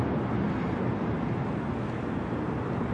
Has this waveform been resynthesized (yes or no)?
no